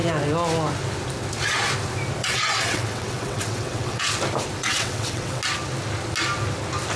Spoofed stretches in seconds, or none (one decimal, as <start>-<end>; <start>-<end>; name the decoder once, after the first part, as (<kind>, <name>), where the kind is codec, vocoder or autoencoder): 2.2-4.0 (vocoder, WaveNeXt); 4.6-5.4